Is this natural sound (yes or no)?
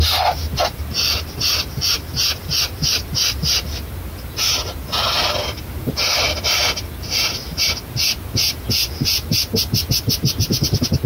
yes